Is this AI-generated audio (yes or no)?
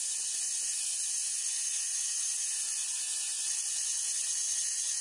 yes